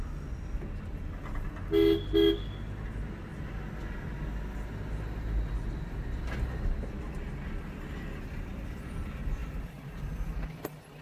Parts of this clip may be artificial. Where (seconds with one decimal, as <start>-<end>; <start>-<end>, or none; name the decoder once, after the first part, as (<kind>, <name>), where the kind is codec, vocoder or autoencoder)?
9.4-10.0 (vocoder, BigVGAN v2)